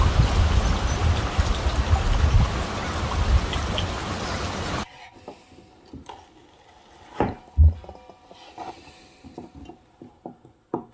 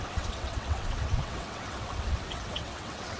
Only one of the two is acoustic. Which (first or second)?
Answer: first